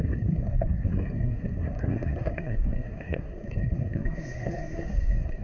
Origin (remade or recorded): remade